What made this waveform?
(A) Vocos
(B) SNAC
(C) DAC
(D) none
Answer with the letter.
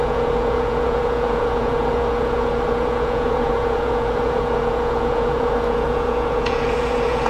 A